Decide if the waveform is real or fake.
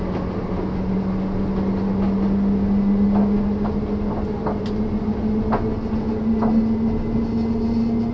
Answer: real